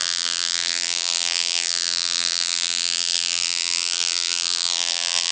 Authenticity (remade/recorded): remade